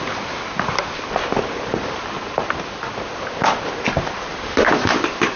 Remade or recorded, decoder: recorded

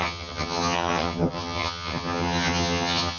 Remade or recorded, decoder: remade, vocoder, HiFi-GAN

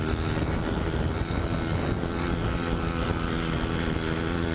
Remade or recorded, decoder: recorded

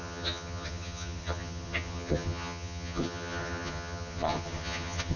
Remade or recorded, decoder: remade, vocoder, HiFi-GAN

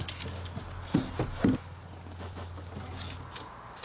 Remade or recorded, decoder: recorded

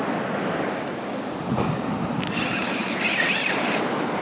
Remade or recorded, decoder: recorded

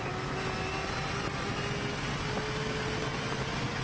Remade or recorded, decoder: recorded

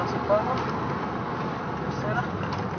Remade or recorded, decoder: recorded